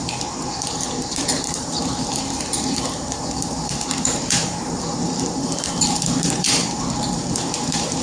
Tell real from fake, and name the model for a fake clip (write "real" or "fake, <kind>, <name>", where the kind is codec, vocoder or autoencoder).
fake, vocoder, BigVGAN v2